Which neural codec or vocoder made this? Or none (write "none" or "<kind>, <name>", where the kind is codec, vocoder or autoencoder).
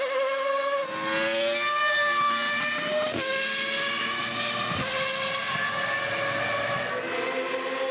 none